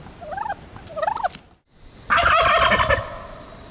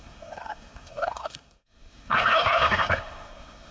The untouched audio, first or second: first